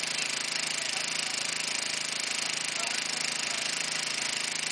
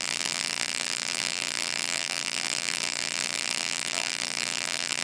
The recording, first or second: first